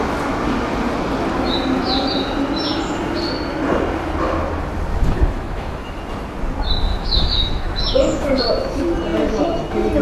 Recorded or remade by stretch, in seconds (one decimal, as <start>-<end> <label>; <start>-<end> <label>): 0.0-5.0 recorded; 5.0-6.0 remade; 6.0-6.9 recorded; 6.9-8.4 remade; 8.4-10.0 recorded